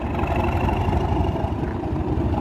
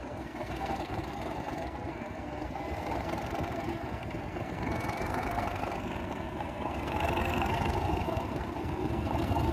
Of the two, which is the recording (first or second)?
first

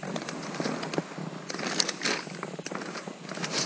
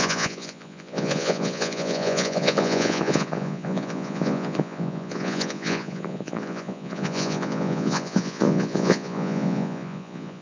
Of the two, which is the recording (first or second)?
first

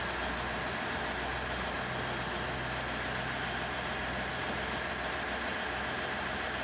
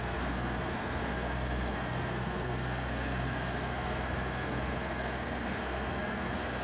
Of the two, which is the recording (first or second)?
first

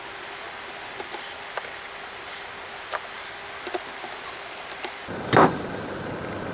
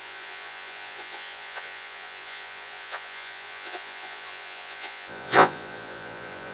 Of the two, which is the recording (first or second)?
first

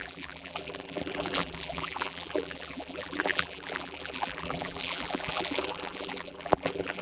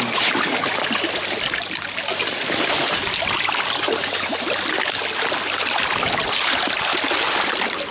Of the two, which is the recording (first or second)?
second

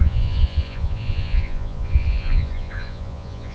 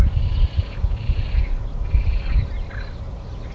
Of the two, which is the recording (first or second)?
second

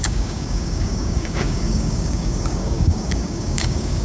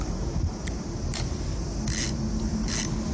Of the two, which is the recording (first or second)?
second